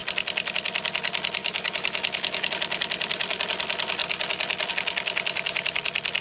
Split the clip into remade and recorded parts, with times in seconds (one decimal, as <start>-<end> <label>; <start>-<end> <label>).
0.0-1.4 recorded; 1.4-2.5 remade; 2.5-6.2 recorded